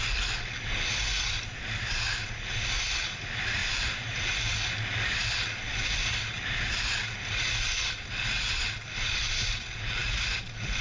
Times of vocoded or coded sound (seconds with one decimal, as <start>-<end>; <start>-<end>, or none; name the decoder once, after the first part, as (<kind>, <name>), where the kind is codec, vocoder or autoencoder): 3.6-4.2 (vocoder, BigVGAN v2)